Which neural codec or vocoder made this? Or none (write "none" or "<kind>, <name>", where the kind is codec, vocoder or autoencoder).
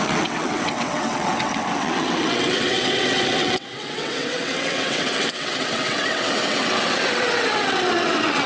vocoder, WaveNeXt